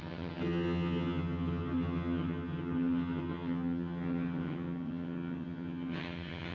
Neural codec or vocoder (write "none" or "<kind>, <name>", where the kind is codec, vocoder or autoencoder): vocoder, HiFi-GAN